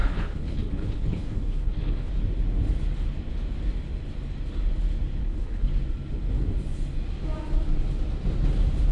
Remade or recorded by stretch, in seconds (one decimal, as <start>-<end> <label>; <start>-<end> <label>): 0.0-2.1 remade; 2.1-5.2 recorded; 5.2-5.7 remade; 5.7-8.9 recorded